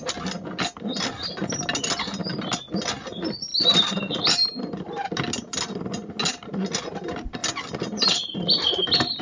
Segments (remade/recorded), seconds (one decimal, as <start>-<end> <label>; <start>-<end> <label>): 0.0-9.2 recorded